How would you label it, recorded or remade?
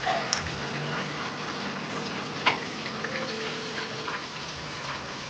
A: recorded